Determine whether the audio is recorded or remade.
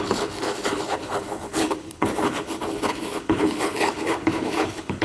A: remade